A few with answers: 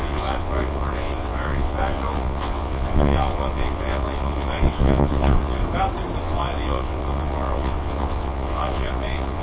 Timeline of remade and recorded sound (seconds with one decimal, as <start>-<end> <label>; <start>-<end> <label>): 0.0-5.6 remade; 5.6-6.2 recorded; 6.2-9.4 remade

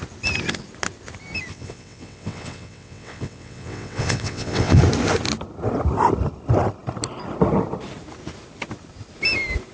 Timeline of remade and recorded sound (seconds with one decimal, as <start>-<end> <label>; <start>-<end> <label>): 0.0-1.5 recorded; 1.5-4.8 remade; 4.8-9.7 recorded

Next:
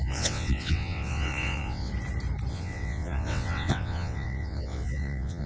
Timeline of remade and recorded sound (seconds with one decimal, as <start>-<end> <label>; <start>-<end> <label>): 0.0-1.9 remade; 1.9-2.5 recorded; 2.5-5.5 remade

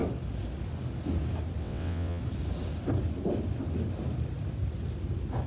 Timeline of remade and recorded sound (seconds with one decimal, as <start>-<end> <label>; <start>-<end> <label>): 0.0-1.6 recorded; 1.6-2.2 remade; 2.2-5.5 recorded